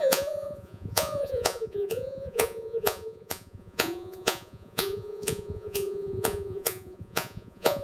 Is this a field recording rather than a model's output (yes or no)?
no